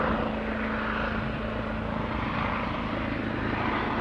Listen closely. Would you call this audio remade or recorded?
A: recorded